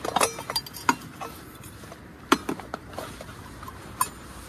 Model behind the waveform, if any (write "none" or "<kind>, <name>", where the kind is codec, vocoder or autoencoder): none